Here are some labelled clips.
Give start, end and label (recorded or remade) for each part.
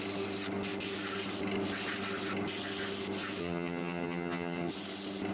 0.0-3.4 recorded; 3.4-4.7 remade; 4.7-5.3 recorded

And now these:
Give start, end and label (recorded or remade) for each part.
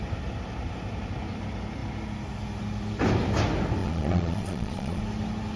0.0-3.8 recorded; 3.8-5.0 remade; 5.0-5.6 recorded